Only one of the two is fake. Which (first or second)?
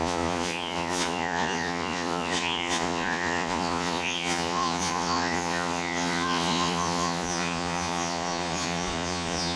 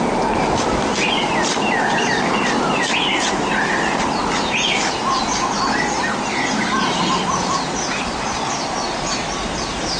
first